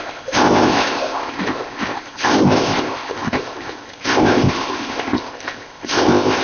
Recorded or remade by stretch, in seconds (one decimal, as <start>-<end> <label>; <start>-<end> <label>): 0.0-6.4 remade